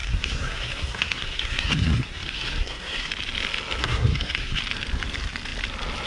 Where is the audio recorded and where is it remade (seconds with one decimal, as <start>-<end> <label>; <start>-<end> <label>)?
0.0-3.1 remade; 3.1-3.8 recorded; 3.8-4.6 remade; 4.6-6.1 recorded